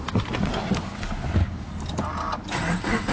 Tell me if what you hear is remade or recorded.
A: recorded